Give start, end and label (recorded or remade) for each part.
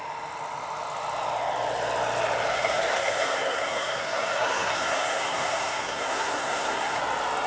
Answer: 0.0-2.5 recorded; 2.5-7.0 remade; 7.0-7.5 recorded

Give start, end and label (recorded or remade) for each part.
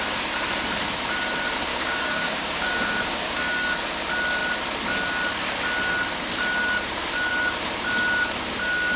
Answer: 0.0-1.7 recorded; 1.7-3.7 remade; 3.7-9.0 recorded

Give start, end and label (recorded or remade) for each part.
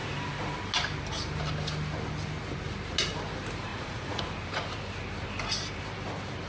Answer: 0.0-3.7 recorded; 3.7-4.2 remade; 4.2-6.5 recorded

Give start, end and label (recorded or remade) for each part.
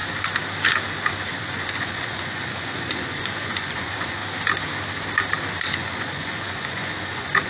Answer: 0.0-1.2 recorded; 1.2-4.2 remade; 4.2-5.6 recorded; 5.6-7.5 remade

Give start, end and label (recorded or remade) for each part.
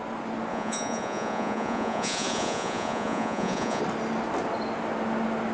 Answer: 0.0-0.5 recorded; 0.5-3.8 remade; 3.8-5.5 recorded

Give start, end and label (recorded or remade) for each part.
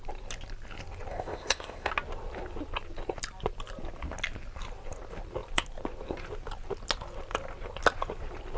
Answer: 0.0-1.1 recorded; 1.1-1.9 remade; 1.9-8.6 recorded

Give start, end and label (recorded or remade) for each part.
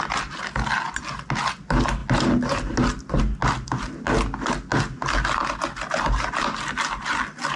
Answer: 0.0-7.6 recorded